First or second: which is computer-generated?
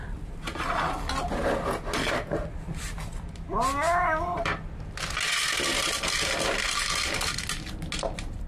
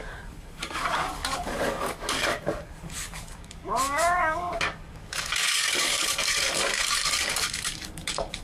second